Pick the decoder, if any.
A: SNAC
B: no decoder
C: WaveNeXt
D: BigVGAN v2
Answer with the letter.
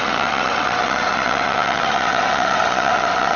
C